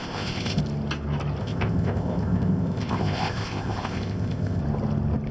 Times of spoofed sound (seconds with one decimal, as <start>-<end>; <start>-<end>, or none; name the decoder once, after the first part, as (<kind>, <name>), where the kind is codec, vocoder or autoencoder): 0.0-0.6 (codec, ZipCodec); 1.4-4.6